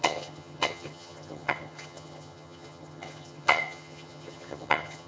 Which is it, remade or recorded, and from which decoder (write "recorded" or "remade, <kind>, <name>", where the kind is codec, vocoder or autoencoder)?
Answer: remade, vocoder, HiFi-GAN